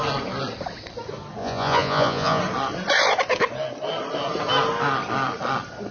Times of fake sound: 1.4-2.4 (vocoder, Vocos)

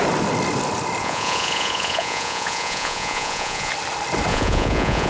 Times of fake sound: 1.0-3.7 (vocoder, Vocos); 4.3-5.1

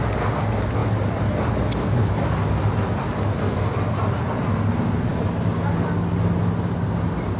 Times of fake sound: none

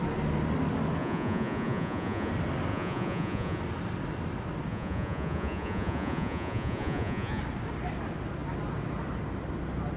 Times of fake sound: 1.0-2.3 (vocoder, Vocos); 2.7-3.6; 4.7-7.4